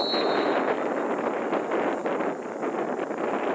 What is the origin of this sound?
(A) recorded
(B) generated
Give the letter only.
A